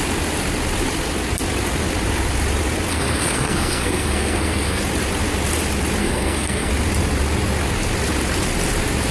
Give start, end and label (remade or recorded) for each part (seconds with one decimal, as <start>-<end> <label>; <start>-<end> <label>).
0.0-2.9 recorded; 2.9-4.8 remade; 4.8-6.0 recorded; 6.0-6.7 remade; 6.7-9.1 recorded